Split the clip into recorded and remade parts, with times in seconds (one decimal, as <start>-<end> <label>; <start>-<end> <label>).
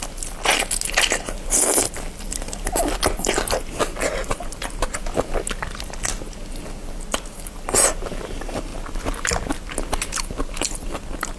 0.0-4.2 recorded; 4.2-4.9 remade; 4.9-11.4 recorded